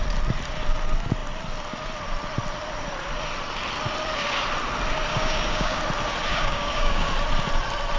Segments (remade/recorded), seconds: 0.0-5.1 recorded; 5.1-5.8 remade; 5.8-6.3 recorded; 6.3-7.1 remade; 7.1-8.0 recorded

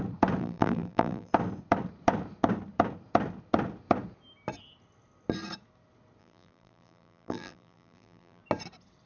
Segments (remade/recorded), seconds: 0.0-0.4 recorded; 0.4-1.3 remade; 1.3-6.2 recorded; 6.2-8.4 remade; 8.4-9.1 recorded

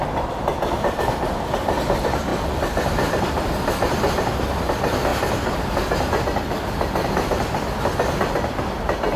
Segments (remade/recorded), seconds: 0.0-2.3 recorded; 2.3-4.4 remade; 4.4-9.2 recorded